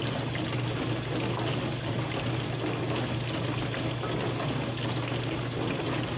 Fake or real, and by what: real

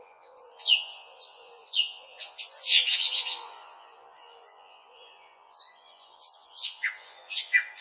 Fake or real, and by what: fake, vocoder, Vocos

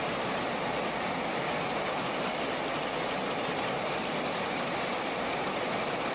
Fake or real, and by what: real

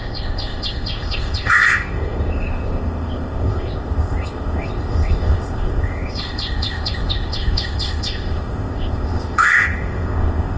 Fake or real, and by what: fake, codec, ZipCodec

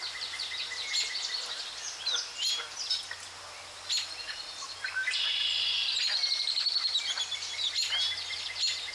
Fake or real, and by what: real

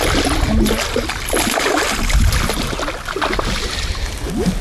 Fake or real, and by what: real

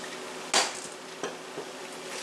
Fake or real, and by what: real